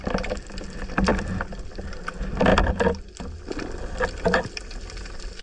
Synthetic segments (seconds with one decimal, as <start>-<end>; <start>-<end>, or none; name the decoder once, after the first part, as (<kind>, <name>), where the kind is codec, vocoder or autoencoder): none